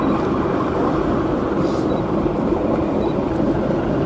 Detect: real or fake real